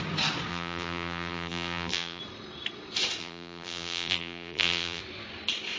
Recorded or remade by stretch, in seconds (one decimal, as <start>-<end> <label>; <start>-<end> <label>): 0.0-0.5 recorded; 0.5-2.2 remade; 2.2-3.2 recorded; 3.2-5.0 remade; 5.0-5.8 recorded

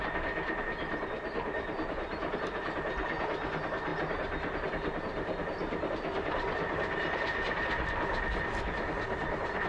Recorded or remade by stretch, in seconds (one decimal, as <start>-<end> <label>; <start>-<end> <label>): 0.0-9.7 recorded

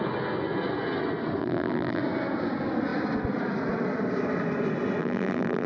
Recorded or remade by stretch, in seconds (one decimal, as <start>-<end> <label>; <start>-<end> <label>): 0.0-1.4 recorded; 1.4-2.0 remade; 2.0-5.0 recorded; 5.0-5.7 remade

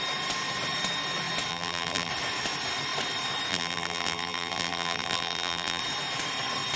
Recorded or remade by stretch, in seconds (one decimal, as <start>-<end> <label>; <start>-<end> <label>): 0.0-1.5 recorded; 1.5-2.1 remade; 2.1-3.5 recorded; 3.5-5.8 remade; 5.8-6.8 recorded

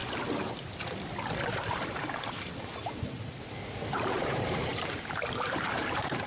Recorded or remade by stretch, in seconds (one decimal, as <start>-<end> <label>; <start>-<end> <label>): 0.0-3.7 recorded; 3.7-6.3 remade